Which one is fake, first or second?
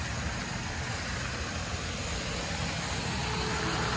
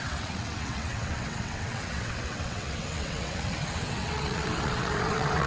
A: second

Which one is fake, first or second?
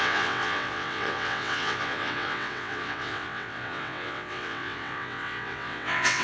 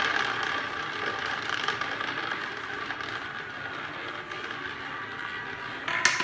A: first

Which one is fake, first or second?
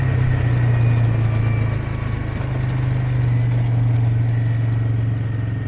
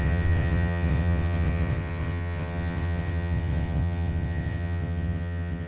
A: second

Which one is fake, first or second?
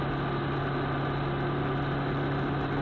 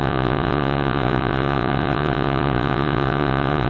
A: second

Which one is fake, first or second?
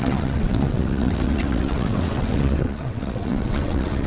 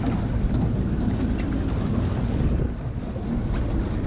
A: first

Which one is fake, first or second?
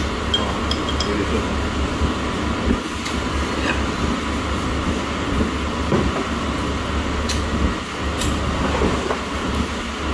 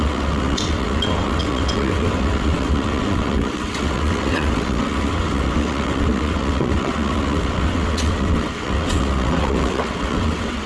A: second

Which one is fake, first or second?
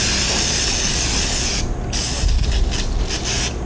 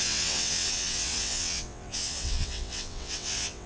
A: second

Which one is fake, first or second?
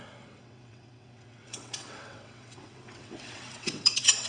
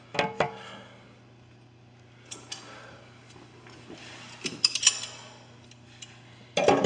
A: first